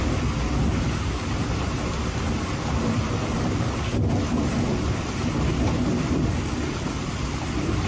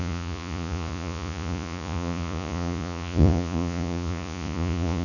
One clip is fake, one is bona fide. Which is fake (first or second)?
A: second